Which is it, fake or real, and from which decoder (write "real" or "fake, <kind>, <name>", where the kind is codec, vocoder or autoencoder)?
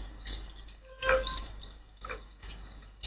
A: fake, codec, DAC